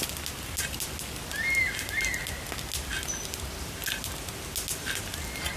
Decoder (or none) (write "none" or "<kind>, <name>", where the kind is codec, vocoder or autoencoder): none